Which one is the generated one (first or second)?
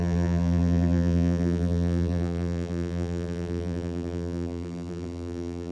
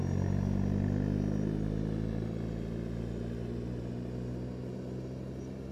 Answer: first